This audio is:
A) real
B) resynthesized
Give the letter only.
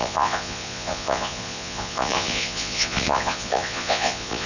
B